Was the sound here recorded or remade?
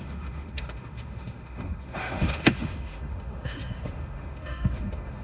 remade